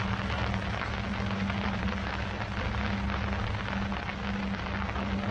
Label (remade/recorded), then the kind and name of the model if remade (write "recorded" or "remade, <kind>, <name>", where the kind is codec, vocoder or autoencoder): recorded